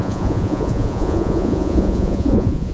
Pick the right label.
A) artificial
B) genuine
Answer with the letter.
A